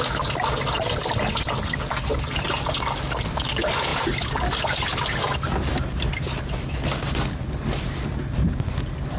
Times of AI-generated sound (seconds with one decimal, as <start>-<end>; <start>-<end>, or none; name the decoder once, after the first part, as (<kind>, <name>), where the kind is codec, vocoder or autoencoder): none